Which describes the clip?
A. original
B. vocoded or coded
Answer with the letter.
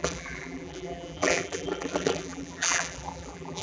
B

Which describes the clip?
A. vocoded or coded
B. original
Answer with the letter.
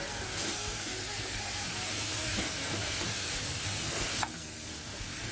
A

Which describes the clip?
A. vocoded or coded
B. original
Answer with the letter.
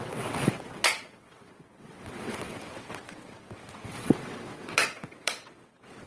A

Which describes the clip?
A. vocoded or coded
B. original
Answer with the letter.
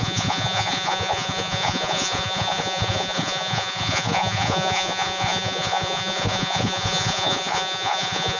A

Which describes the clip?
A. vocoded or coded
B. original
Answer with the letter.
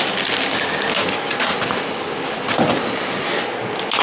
B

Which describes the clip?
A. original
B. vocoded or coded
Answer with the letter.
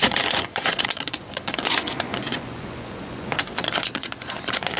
B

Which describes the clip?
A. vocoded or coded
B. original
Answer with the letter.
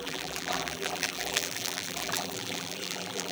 A